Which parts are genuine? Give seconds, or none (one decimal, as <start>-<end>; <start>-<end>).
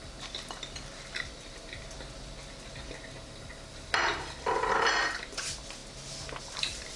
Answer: 0.0-7.0